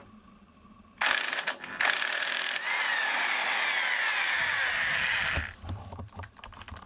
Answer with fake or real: real